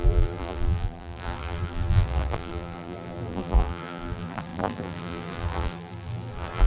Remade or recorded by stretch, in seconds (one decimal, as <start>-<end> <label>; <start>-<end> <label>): 0.0-6.7 remade